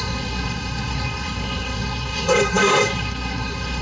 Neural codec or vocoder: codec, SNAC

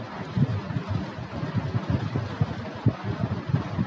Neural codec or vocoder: none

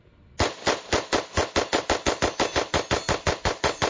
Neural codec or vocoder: none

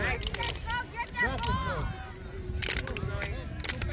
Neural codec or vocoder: none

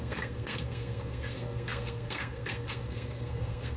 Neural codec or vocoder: codec, SNAC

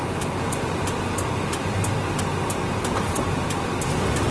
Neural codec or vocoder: none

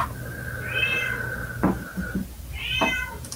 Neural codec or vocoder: none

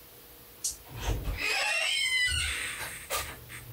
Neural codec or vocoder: none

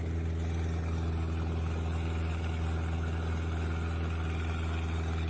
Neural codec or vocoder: none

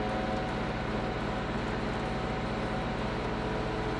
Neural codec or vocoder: none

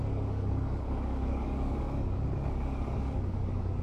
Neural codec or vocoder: codec, DAC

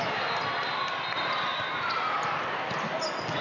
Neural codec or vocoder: none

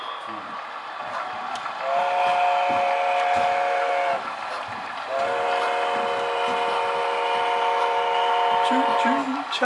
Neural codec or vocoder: none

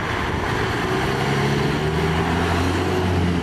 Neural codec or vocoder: none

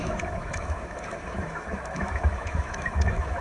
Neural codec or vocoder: autoencoder, DAC-VAE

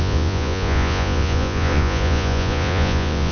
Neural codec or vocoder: vocoder, Vocos